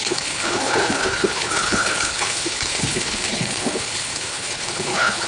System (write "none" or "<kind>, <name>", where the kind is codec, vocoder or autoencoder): codec, HILCodec